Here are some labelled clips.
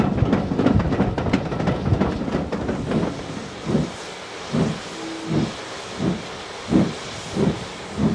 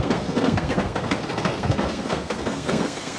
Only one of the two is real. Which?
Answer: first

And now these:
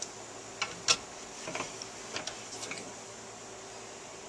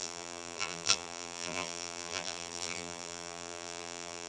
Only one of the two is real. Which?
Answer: first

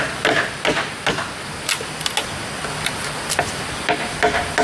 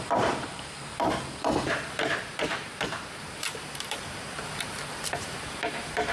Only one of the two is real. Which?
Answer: first